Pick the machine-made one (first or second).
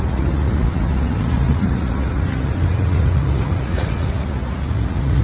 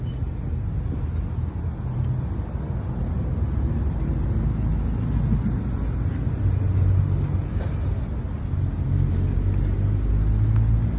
first